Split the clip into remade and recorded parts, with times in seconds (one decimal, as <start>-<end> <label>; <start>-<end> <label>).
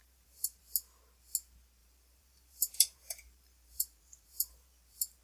0.0-0.6 remade; 0.6-1.8 recorded; 1.8-5.2 remade